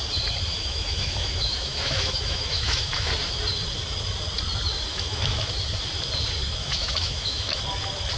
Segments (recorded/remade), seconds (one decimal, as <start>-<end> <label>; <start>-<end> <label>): 0.0-0.5 recorded; 0.5-3.1 remade; 3.1-4.9 recorded; 4.9-5.5 remade; 5.5-6.6 recorded; 6.6-7.6 remade; 7.6-8.2 recorded